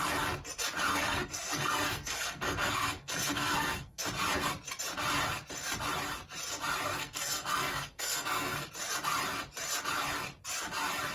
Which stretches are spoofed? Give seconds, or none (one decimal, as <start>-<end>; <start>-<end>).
0.9-4.0; 6.9-8.7